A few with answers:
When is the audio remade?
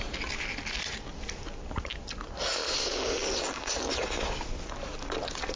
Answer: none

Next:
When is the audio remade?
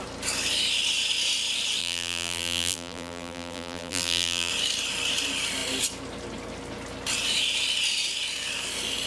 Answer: 1.8-4.5 (vocoder, BigVGAN v2)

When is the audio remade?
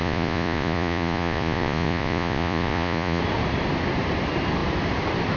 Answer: 0.0-3.2 (vocoder, Vocos)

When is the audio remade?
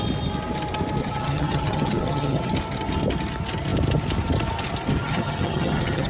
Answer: 1.0-2.5 (vocoder, HiFi-GAN); 5.0-6.1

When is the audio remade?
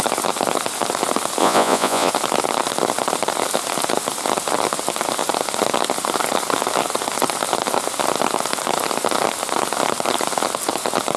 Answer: 1.4-2.1 (vocoder, Vocos)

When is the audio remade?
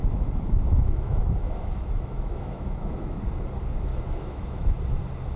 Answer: 0.0-3.2 (autoencoder, DAC-VAE); 3.9-4.8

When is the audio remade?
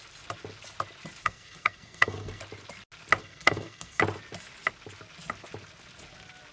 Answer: 1.2-2.4 (codec, SNAC); 3.2-4.0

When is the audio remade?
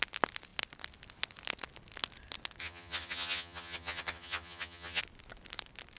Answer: 2.6-5.0 (vocoder, HiFi-GAN)